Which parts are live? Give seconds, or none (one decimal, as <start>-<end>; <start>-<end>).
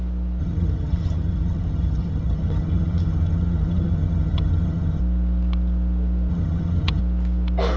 0.0-0.4; 5.0-6.3; 7.0-7.8